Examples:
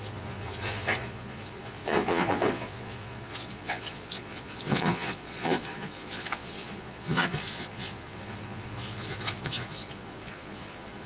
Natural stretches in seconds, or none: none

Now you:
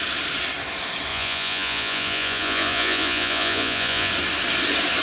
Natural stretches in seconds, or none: 0.0-1.1; 4.1-5.0

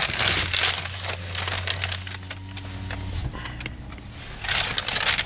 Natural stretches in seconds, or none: 0.0-5.3

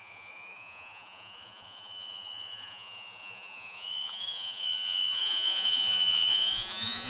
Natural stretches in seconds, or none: none

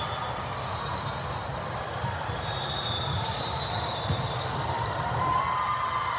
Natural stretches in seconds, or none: 0.0-6.2

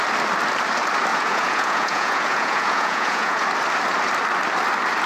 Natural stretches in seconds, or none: 0.0-1.1; 3.4-5.1

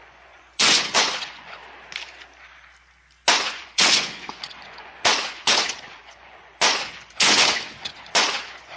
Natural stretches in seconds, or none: 1.6-3.3